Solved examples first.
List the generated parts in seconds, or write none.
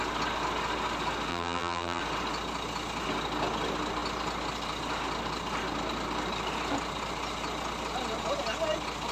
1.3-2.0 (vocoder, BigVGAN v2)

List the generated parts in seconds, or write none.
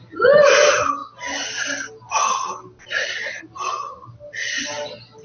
none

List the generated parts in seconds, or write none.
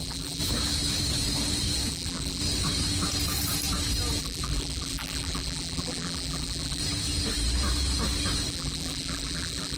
0.0-0.4 (vocoder, BigVGAN v2); 1.9-2.4; 4.2-6.8; 8.5-9.8